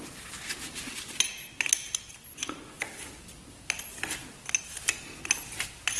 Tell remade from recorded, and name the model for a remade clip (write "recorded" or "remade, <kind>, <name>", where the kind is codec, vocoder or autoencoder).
recorded